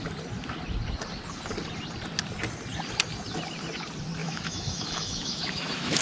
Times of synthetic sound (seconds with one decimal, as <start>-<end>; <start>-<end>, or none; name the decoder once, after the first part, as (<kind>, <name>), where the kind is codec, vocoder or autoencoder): 4.2-6.0 (autoencoder, DAC-VAE)